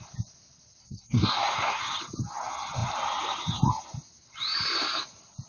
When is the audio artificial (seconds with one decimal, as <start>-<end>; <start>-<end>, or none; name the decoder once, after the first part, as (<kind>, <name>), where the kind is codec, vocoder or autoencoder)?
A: 0.8-1.8 (codec, SNAC)